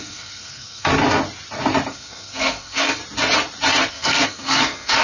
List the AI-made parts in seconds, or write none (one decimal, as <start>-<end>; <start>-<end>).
0.0-0.9; 1.9-3.0; 3.9-5.0